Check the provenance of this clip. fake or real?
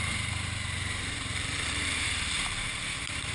fake